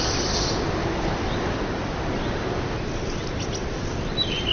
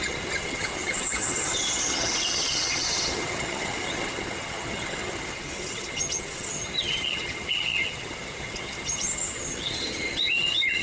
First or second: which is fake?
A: second